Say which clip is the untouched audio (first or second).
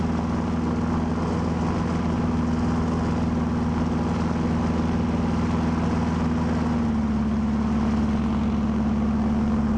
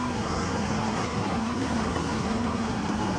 first